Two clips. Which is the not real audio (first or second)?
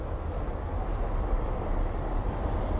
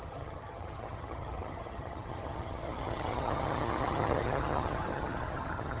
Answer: second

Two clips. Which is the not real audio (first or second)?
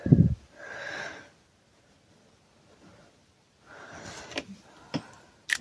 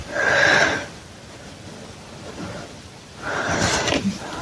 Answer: second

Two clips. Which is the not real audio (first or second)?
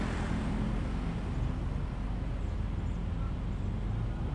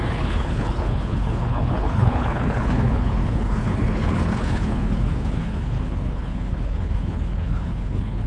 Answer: second